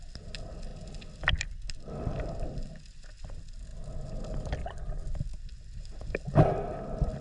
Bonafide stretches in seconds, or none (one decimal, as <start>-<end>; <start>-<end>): 0.0-0.7; 1.9-5.3; 5.8-7.2